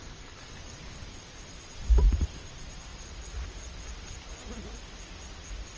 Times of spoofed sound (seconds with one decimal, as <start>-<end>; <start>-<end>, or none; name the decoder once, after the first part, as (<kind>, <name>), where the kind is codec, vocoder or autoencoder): 0.0-0.6 (codec, DAC)